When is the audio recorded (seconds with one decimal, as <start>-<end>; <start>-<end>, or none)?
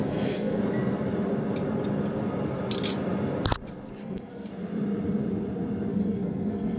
0.6-4.0; 4.5-5.9